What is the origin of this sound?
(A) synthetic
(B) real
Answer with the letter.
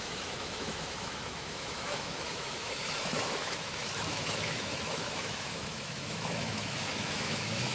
A